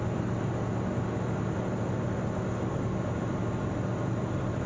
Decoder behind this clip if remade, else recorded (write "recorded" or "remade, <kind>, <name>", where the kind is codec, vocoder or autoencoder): recorded